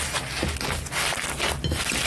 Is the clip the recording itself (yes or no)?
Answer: yes